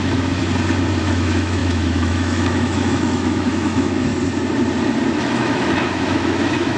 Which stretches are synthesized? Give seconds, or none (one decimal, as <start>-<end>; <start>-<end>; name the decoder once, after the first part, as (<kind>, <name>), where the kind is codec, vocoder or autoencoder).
0.0-0.4 (autoencoder, DAC-VAE); 1.0-4.1; 5.1-6.8